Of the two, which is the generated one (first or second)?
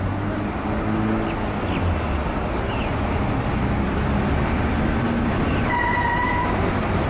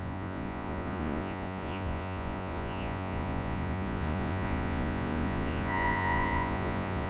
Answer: second